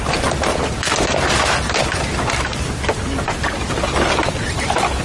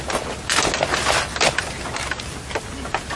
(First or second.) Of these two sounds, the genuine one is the second